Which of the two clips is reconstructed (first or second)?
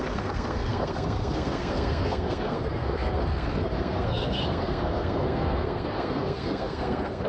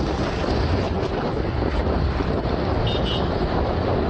first